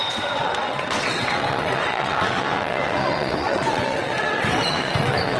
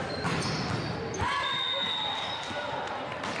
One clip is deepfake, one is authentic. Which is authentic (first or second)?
second